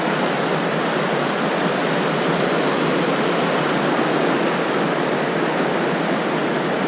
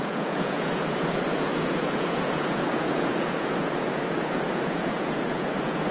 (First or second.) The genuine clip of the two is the first